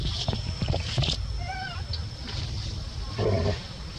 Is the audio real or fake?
real